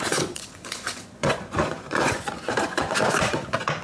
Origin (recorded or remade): remade